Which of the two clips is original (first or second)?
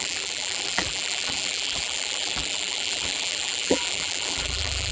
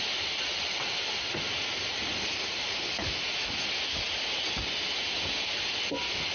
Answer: second